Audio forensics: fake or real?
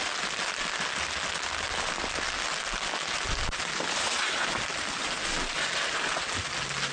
real